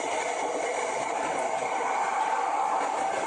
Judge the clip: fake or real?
real